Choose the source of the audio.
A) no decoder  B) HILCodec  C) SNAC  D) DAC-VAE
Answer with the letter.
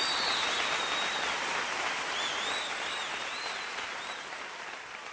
A